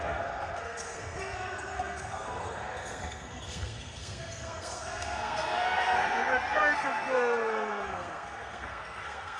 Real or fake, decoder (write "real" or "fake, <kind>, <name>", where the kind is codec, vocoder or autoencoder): fake, codec, SNAC